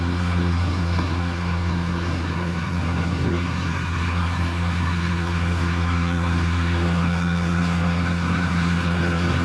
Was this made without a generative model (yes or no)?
no